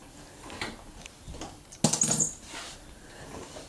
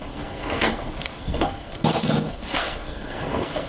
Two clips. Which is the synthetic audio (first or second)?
second